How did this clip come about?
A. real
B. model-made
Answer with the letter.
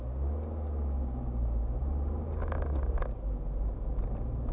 A